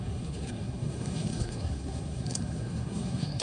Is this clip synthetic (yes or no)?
yes